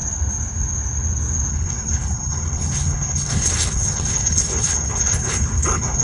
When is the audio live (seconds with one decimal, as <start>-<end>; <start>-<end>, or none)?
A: 0.0-1.5